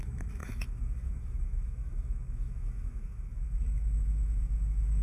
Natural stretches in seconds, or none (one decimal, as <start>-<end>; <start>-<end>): none